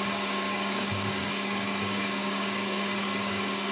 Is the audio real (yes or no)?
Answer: no